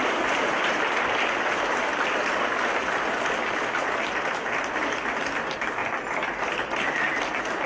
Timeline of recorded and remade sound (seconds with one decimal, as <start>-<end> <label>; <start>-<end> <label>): 0.0-7.7 recorded